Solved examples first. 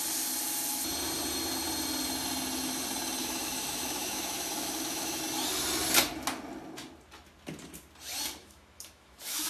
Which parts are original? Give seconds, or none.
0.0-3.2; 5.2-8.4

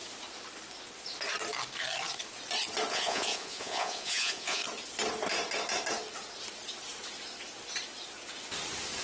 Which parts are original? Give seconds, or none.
0.0-2.9; 4.6-9.0

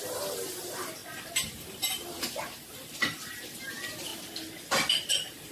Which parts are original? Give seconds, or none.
4.1-5.1

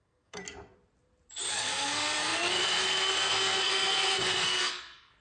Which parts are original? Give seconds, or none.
0.4-1.5